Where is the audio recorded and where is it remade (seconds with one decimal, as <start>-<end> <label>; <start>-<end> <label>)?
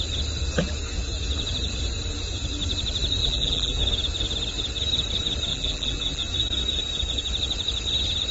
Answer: 0.0-3.2 recorded; 3.2-3.8 remade; 3.8-5.5 recorded; 5.5-6.2 remade; 6.2-8.3 recorded